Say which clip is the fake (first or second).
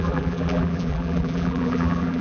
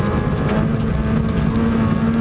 first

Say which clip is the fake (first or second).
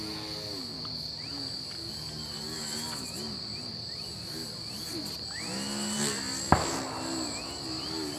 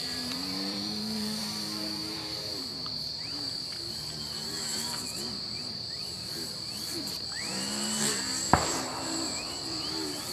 second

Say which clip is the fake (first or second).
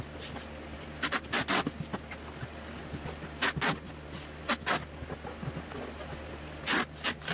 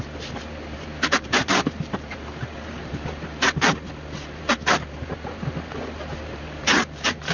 second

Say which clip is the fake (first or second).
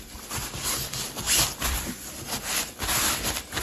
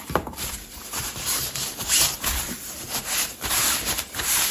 second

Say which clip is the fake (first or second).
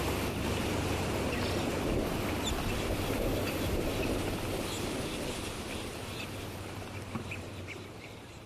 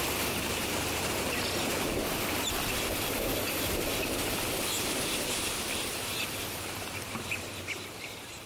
second